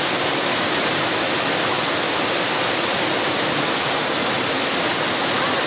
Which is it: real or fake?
real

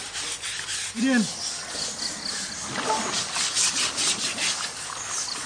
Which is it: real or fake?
real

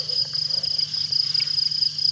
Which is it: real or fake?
real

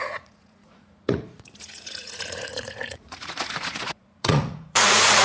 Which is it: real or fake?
fake